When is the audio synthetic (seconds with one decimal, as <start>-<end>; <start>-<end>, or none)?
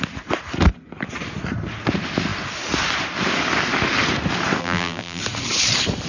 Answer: 4.6-5.2